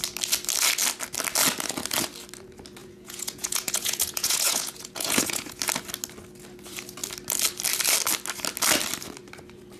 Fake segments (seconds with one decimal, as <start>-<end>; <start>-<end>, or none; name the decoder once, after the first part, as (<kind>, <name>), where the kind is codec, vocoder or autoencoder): 2.8-5.6 (vocoder, Vocos)

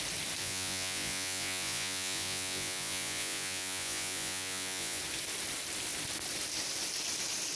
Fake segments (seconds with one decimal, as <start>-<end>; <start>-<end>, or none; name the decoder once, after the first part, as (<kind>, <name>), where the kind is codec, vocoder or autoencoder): 0.4-5.0 (vocoder, Vocos)

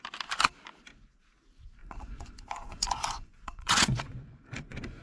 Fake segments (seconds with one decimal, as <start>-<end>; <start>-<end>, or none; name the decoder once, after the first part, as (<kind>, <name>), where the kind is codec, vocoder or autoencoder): 1.8-5.0 (vocoder, Vocos)

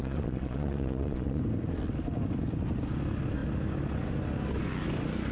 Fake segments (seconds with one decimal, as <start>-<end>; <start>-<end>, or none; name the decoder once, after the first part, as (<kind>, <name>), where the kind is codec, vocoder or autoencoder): 0.0-1.4 (vocoder, Vocos)

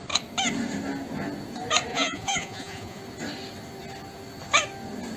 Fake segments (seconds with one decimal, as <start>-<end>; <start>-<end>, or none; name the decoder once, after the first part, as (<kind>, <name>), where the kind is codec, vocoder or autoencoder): 1.9-3.0 (vocoder, Vocos)

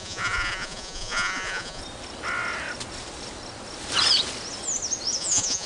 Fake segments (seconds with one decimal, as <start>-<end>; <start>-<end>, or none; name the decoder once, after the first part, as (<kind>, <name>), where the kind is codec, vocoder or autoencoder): 0.0-1.8 (vocoder, Vocos); 5.2-5.7